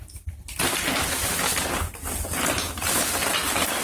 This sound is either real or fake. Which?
real